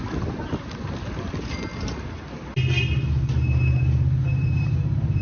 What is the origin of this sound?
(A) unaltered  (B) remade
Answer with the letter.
A